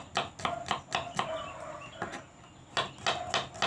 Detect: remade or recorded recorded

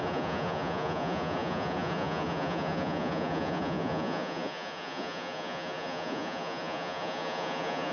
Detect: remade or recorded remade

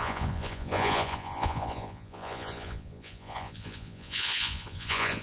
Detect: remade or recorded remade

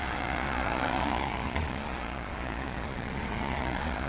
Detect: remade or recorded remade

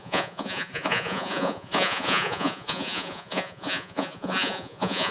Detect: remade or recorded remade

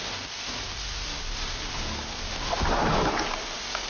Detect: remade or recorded recorded